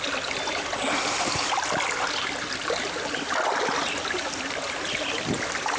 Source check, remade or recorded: recorded